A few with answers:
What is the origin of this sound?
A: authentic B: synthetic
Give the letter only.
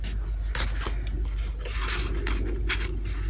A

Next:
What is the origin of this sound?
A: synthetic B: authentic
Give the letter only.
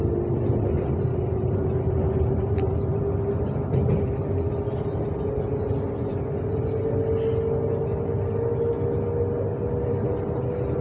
B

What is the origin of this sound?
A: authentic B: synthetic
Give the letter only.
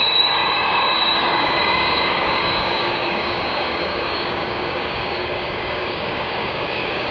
B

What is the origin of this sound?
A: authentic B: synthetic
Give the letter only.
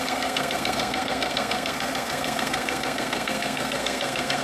B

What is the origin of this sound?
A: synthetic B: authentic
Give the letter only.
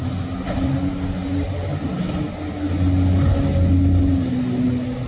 B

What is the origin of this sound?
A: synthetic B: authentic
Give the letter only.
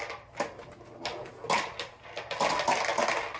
B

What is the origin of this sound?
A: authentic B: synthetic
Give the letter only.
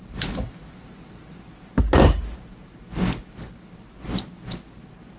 A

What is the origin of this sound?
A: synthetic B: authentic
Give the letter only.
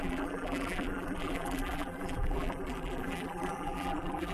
A